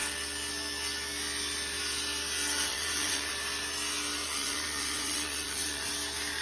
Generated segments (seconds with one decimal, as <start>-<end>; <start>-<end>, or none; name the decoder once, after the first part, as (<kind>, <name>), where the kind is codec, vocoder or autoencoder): 2.7-3.3 (vocoder, Vocos); 4.2-5.9